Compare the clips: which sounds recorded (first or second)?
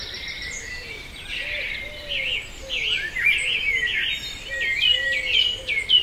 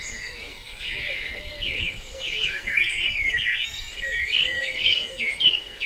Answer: first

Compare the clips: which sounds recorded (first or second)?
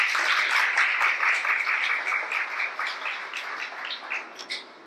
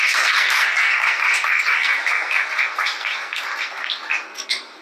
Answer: first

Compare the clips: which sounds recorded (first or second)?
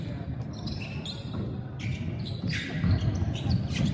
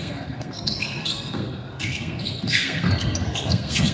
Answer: first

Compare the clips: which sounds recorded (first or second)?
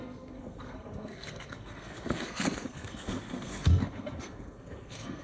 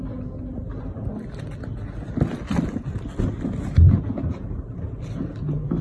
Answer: second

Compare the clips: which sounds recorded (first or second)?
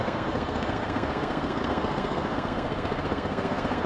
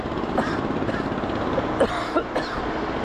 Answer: second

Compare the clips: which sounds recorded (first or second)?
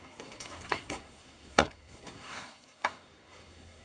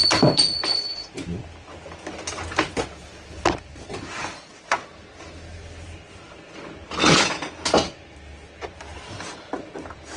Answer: second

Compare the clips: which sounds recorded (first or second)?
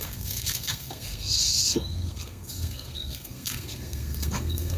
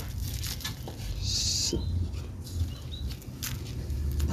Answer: second